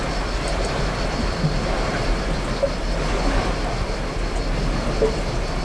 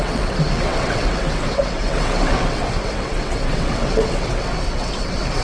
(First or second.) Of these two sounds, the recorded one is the first